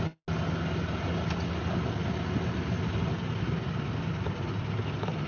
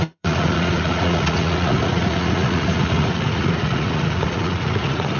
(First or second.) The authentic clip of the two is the first